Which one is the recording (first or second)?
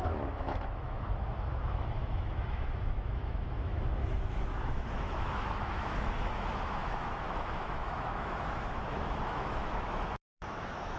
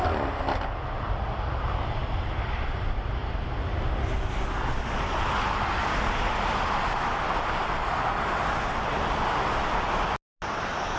second